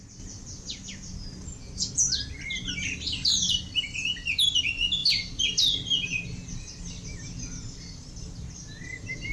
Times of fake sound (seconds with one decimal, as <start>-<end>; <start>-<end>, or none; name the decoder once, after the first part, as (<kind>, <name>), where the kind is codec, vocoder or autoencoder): none